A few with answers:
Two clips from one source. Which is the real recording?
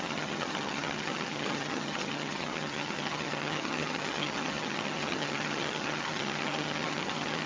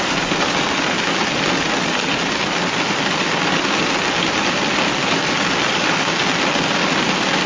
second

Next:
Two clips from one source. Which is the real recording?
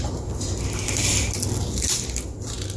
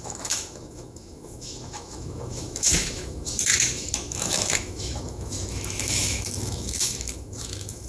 first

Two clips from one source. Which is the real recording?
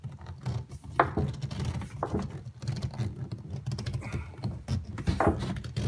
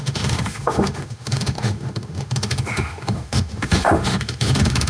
first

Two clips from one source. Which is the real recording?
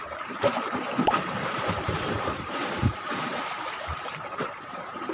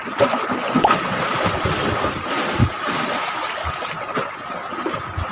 second